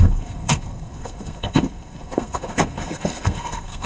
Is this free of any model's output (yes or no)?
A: no